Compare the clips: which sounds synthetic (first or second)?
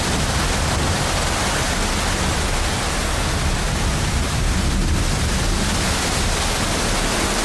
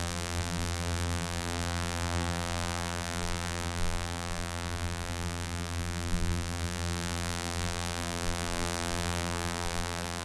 second